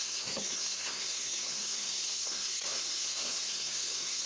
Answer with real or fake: fake